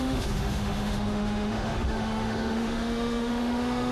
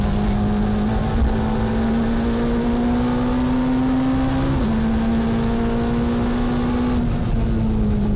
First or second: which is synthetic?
first